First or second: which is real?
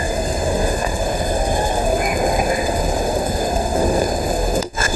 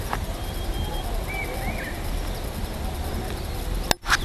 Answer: second